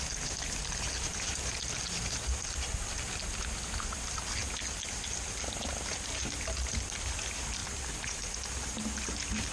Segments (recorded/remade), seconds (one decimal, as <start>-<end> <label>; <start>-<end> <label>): 0.0-9.5 recorded